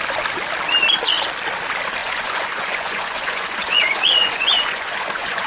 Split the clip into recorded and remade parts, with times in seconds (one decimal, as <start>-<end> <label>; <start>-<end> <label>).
0.0-2.0 recorded; 2.0-5.5 remade